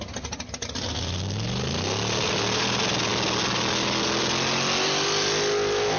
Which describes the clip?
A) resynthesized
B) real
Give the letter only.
B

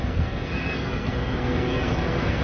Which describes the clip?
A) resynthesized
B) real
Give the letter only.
A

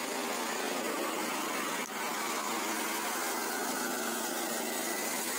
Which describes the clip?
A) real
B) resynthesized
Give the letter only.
A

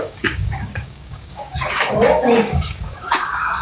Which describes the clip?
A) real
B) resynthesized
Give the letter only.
B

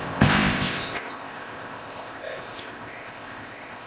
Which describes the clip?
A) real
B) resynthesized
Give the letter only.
B